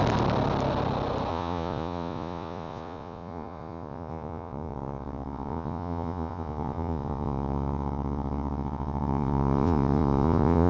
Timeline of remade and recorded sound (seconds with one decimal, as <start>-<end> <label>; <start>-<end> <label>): 0.0-1.3 recorded; 1.3-10.7 remade